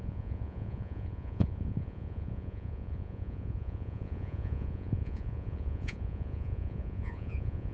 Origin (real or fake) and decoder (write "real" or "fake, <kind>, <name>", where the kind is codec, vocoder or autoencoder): fake, vocoder, Vocos